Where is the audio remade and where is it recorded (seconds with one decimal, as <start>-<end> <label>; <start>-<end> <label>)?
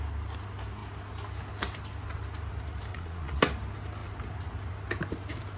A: 0.0-2.9 recorded; 2.9-3.4 remade; 3.4-5.6 recorded